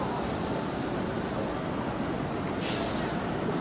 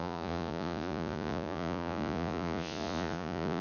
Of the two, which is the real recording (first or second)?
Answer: first